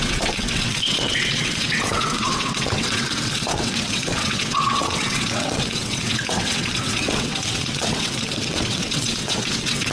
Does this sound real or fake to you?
fake